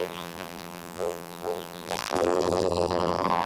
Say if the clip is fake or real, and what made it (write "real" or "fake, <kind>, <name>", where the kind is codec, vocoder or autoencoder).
fake, vocoder, BigVGAN v2